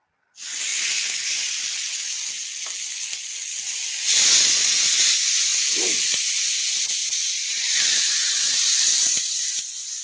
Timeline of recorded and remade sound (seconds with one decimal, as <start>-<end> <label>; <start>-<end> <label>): 0.0-7.0 recorded; 7.0-9.5 remade; 9.5-10.0 recorded